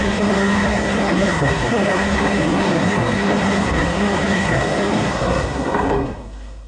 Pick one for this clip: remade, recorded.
remade